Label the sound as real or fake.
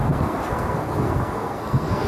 fake